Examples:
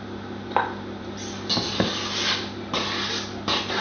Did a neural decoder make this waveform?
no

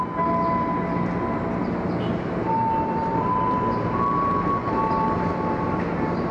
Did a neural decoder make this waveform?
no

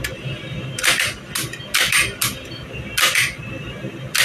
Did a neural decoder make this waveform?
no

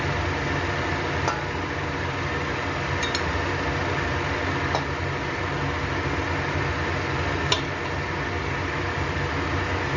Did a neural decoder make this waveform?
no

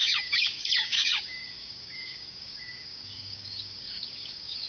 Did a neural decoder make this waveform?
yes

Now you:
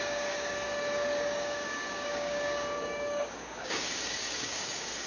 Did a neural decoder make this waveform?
yes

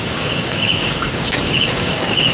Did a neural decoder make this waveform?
yes